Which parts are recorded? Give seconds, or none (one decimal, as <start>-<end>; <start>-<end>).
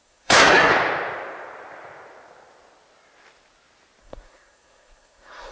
0.7-4.0